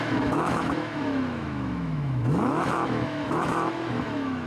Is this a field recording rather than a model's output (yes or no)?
no